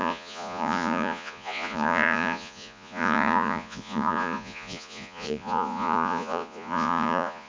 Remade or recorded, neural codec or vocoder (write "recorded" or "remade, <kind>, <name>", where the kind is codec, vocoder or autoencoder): remade, vocoder, Vocos